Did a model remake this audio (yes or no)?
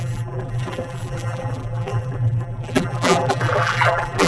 yes